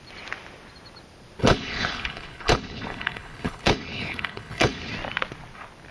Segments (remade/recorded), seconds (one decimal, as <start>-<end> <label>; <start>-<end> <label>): 0.0-1.4 recorded; 1.4-4.9 remade; 4.9-5.9 recorded